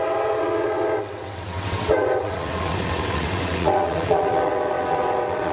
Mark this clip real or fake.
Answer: fake